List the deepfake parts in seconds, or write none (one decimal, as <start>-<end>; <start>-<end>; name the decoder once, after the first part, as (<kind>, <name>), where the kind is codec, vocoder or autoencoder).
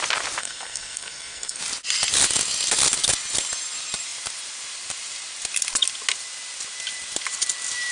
0.4-1.6 (codec, SNAC)